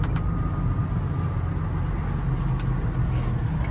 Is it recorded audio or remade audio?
recorded